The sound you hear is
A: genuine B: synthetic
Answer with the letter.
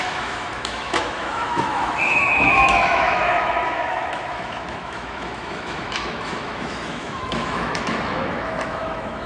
B